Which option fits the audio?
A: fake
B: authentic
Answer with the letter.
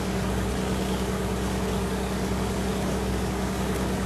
A